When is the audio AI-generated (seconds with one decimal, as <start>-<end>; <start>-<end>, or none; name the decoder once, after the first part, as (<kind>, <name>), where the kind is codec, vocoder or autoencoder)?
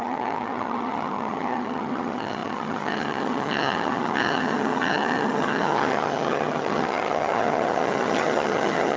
0.0-9.0 (vocoder, HiFi-GAN)